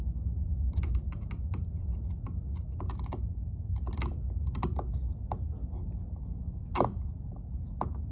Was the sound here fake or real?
real